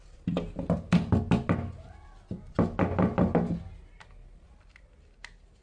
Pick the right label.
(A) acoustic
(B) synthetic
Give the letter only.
A